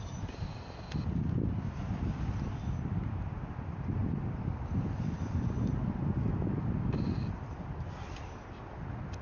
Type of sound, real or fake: real